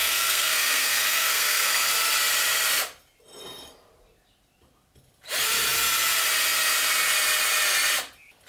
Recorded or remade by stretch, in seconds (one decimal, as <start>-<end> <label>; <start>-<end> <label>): 0.0-1.9 remade; 1.9-8.5 recorded